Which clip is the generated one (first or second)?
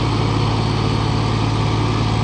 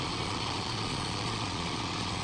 second